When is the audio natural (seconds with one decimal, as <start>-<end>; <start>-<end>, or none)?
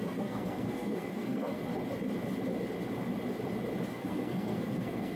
1.6-3.9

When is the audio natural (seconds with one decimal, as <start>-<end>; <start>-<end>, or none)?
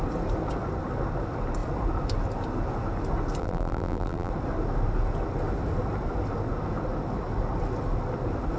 0.0-3.4; 4.3-8.6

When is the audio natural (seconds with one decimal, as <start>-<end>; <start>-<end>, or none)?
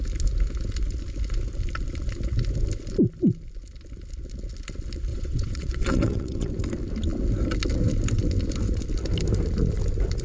0.0-5.1; 6.5-10.2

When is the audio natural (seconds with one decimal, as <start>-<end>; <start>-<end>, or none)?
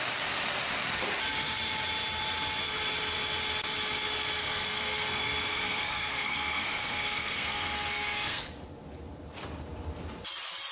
0.0-4.4; 8.4-10.7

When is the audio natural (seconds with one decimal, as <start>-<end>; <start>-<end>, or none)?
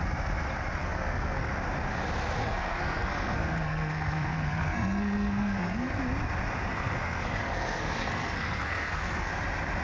0.0-0.8; 1.5-2.4; 6.0-6.7; 9.3-9.8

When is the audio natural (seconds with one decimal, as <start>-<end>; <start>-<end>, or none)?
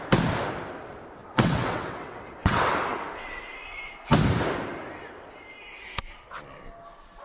0.0-1.2; 2.6-7.2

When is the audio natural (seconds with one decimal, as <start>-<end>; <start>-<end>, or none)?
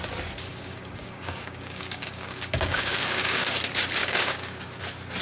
0.0-0.5; 3.6-4.0; 4.8-5.2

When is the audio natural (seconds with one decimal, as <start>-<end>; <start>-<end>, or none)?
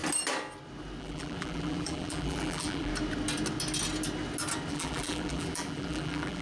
0.0-1.0; 2.9-4.7